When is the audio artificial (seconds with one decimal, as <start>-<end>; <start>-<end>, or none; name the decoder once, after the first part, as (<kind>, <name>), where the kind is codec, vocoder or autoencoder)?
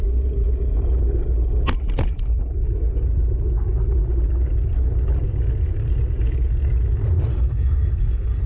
7.3-8.5 (codec, SNAC)